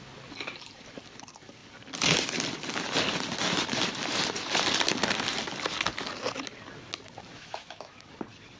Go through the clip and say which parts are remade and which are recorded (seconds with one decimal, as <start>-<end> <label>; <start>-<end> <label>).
0.0-7.3 recorded; 7.3-8.1 remade; 8.1-8.6 recorded